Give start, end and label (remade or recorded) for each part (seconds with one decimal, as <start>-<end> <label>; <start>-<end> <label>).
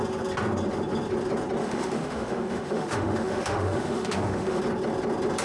0.0-1.6 recorded; 1.6-4.6 remade; 4.6-5.4 recorded